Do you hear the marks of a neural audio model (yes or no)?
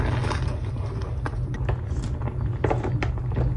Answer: no